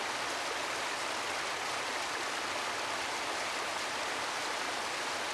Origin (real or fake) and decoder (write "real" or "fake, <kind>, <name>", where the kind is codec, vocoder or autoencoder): real